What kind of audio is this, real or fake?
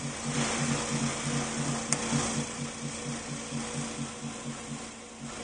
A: real